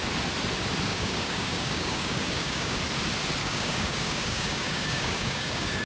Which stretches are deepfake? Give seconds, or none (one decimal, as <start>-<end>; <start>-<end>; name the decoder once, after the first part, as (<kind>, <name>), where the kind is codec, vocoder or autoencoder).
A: 0.9-2.8 (codec, DAC); 3.4-5.9